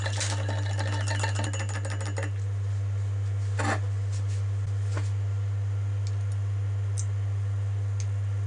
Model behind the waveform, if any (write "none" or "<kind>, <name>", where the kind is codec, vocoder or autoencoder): none